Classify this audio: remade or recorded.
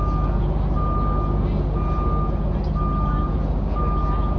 recorded